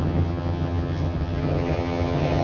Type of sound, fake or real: fake